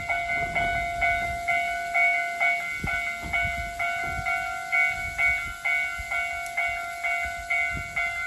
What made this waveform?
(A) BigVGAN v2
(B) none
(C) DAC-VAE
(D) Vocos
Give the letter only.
B